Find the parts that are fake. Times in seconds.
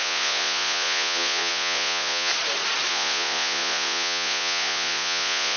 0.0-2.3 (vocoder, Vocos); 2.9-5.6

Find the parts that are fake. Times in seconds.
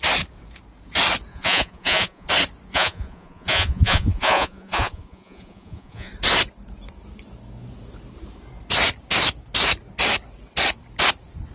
1.3-2.3 (vocoder, Vocos); 2.7-6.1